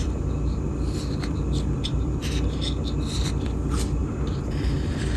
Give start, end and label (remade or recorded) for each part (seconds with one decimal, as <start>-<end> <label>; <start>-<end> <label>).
0.0-2.3 remade; 2.3-4.0 recorded; 4.0-5.2 remade